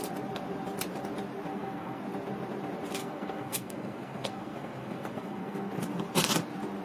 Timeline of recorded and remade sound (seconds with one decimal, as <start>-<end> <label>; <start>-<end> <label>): 0.0-1.5 recorded; 1.5-2.0 remade; 2.0-3.0 recorded; 3.0-5.7 remade; 5.7-6.8 recorded